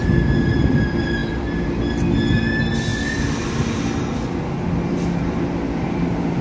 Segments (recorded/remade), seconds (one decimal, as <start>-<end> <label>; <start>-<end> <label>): 0.0-6.4 recorded